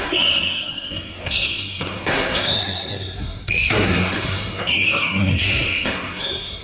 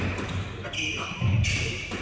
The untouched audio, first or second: second